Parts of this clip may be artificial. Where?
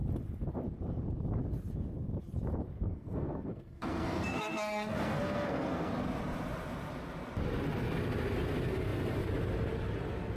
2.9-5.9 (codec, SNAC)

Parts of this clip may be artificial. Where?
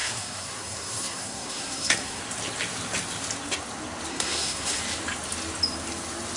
0.0-2.2 (codec, SNAC); 4.1-4.8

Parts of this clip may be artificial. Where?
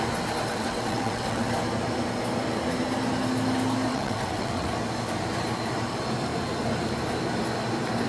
0.5-1.5 (vocoder, WaveNeXt); 3.9-4.7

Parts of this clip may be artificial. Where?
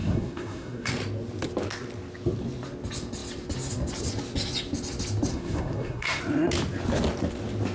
0.0-0.9 (codec, SNAC); 5.3-6.2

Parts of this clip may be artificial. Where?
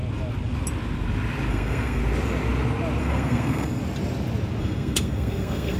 1.5-2.0 (codec, SNAC); 3.0-3.8; 4.6-5.8